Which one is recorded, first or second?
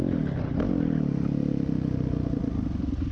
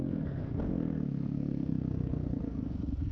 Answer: first